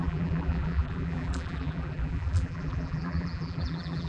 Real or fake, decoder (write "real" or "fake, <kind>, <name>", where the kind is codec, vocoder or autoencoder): fake, vocoder, BigVGAN v2